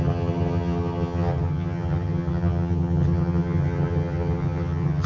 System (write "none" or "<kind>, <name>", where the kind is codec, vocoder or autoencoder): vocoder, HiFi-GAN